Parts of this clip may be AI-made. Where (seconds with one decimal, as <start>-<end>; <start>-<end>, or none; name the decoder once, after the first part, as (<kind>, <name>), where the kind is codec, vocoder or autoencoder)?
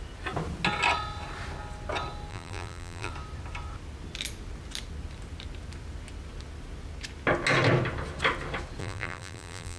2.3-3.1 (vocoder, BigVGAN v2); 8.8-9.8